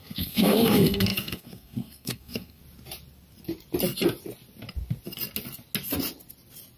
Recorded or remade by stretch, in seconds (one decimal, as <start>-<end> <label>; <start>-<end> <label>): 0.0-2.6 remade; 2.6-6.8 recorded